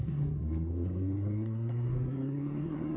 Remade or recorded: remade